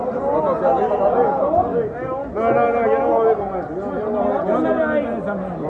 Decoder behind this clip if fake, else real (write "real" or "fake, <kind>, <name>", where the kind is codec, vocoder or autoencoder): real